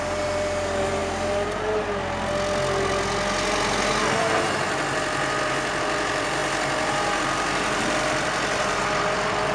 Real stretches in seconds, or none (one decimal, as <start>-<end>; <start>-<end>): 1.0-5.8; 6.4-7.2

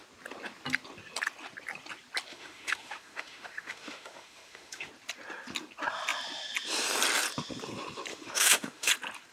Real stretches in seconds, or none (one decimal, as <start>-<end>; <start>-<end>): 0.0-2.3; 4.9-8.1; 8.9-9.3

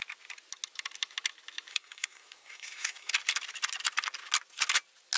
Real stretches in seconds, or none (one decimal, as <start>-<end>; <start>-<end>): 0.0-1.7; 3.1-5.2

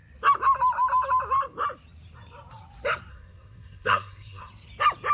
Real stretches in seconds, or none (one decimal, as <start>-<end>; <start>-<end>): 0.0-3.1; 4.5-5.1

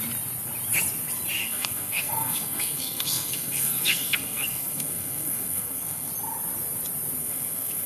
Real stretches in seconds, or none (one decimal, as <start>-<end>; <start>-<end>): 0.0-1.4; 6.1-7.2

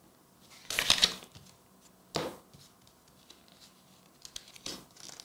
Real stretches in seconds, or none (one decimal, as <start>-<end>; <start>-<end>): 0.0-5.2